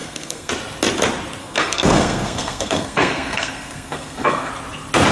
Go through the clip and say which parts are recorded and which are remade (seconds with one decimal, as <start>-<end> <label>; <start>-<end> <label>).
0.0-0.5 remade; 0.5-1.4 recorded; 1.4-4.5 remade; 4.5-5.1 recorded